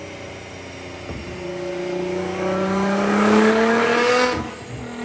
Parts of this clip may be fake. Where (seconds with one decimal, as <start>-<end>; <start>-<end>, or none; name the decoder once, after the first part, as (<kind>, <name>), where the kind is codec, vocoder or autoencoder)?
1.5-4.5 (codec, DAC)